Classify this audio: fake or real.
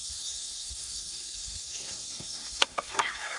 fake